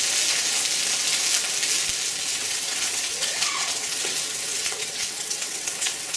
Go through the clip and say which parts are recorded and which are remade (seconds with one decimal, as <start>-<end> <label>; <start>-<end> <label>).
0.0-2.3 recorded; 2.3-6.2 remade